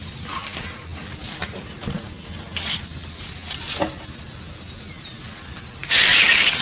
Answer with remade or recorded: recorded